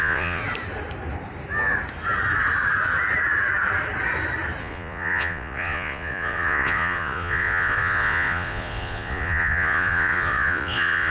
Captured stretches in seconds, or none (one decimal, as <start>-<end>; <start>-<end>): 0.4-4.6